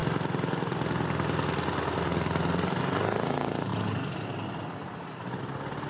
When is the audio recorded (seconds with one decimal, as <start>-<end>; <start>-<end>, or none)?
0.0-5.9